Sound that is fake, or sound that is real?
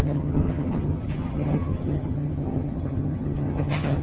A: fake